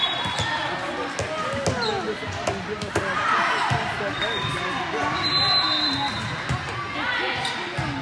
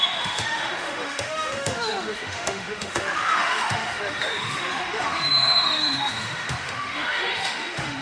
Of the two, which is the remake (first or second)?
second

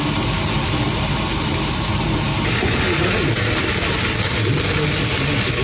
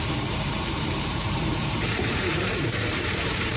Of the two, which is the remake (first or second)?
second